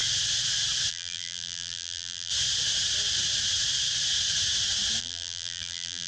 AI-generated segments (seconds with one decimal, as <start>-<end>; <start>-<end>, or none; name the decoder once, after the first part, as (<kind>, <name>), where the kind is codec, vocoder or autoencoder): 0.9-2.3 (vocoder, BigVGAN v2); 5.0-6.1